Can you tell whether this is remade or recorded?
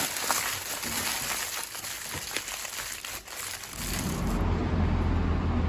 recorded